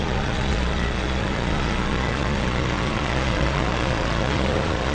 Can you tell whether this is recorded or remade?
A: remade